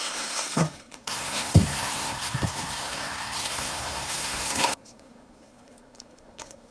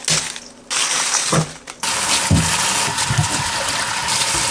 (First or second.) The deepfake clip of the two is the first